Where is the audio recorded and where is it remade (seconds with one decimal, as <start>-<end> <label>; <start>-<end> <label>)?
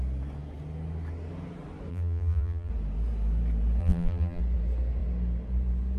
0.0-1.9 recorded; 1.9-2.7 remade; 2.7-3.8 recorded; 3.8-4.4 remade; 4.4-6.0 recorded